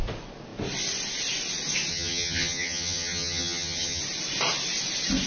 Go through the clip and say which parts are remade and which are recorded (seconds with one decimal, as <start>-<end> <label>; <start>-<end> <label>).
0.0-1.9 recorded; 1.9-4.0 remade; 4.0-5.3 recorded